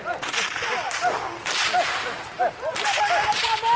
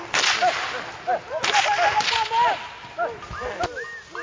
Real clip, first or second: second